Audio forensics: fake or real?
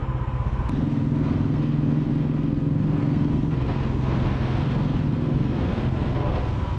fake